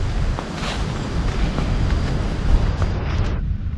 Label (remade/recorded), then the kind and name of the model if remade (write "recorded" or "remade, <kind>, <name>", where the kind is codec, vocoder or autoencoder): recorded